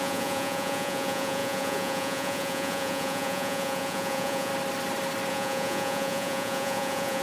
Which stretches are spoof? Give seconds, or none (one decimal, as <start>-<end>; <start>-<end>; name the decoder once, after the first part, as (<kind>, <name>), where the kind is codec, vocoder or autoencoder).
0.0-4.5 (vocoder, Vocos); 5.3-7.2